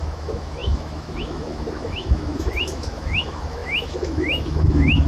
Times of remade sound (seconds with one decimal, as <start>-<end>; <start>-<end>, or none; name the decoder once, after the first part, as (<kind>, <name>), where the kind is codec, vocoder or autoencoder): 0.0-5.1 (autoencoder, DAC-VAE)